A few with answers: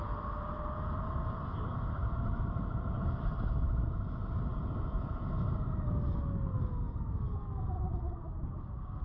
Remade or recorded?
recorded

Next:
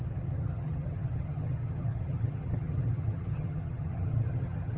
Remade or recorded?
remade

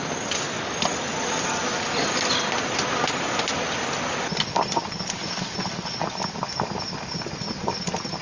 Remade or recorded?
recorded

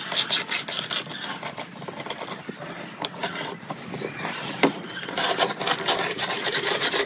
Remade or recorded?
recorded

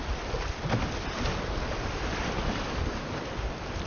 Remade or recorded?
recorded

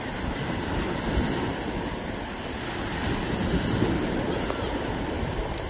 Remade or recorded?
recorded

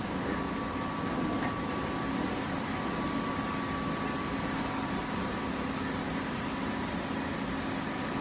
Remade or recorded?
recorded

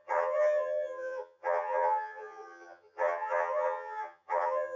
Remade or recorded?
remade